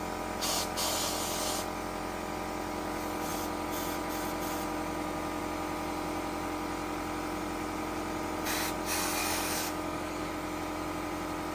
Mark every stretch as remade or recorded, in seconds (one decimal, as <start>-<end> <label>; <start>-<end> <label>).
0.0-9.2 recorded; 9.2-10.3 remade; 10.3-11.5 recorded